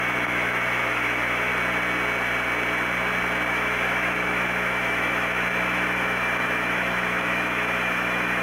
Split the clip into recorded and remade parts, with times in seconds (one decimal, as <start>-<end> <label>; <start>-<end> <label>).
0.0-1.5 remade; 1.5-3.5 recorded; 3.5-8.4 remade